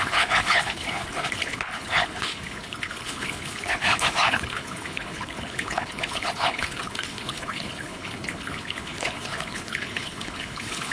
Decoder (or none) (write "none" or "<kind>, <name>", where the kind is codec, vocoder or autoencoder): codec, HILCodec